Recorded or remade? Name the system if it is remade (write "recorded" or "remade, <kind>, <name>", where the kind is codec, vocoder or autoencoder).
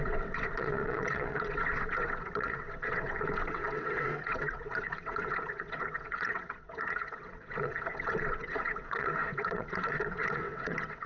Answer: remade, vocoder, WaveNeXt